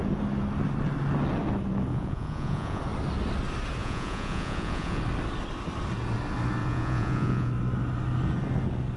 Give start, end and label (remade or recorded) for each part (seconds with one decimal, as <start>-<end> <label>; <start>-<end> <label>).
0.0-1.9 recorded; 1.9-2.8 remade; 2.8-3.8 recorded; 3.8-5.0 remade; 5.0-6.6 recorded; 6.6-7.5 remade; 7.5-9.0 recorded